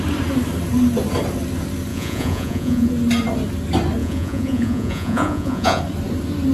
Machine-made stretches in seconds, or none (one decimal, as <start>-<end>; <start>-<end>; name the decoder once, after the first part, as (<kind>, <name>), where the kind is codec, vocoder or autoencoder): 1.9-2.9 (vocoder, Vocos); 4.0-5.8